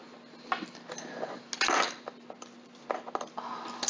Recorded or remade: recorded